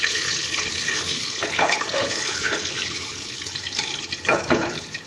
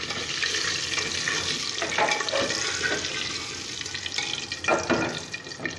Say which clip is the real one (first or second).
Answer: second